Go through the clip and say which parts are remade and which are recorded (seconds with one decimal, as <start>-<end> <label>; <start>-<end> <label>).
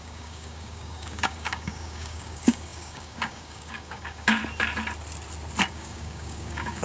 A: 0.0-4.4 remade; 4.4-5.7 recorded; 5.7-6.8 remade